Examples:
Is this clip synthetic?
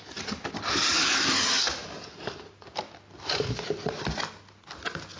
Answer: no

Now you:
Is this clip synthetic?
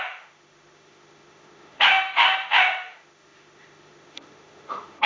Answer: yes